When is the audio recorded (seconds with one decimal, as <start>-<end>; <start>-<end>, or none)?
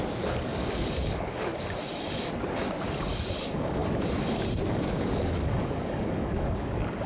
1.5-3.4; 3.8-4.7